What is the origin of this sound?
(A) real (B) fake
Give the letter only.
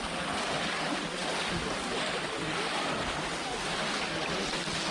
A